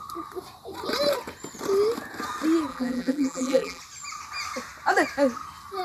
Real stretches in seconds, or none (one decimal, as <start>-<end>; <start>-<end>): 0.0-2.7; 3.8-5.8